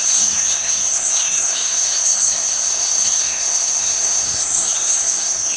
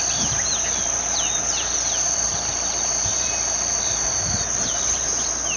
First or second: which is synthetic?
first